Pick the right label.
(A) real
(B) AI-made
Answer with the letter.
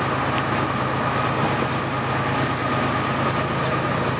A